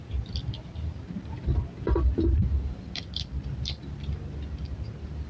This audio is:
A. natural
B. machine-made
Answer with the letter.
B